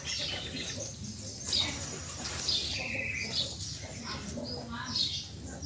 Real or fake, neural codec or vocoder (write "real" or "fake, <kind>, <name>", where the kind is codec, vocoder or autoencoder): real